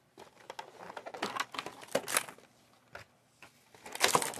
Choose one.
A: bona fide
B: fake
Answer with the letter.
A